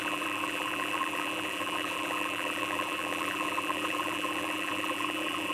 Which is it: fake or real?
fake